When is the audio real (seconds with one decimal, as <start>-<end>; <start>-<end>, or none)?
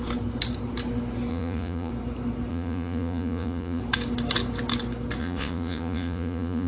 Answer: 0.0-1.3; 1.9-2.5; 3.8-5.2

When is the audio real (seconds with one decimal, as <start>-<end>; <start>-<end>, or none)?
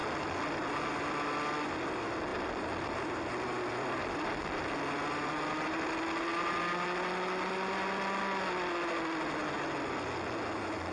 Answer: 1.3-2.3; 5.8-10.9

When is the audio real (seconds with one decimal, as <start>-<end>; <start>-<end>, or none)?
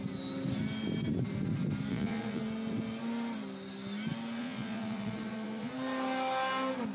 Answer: 0.0-1.9; 2.4-4.4; 5.7-6.9